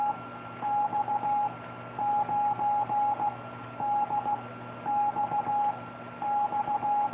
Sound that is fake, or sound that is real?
real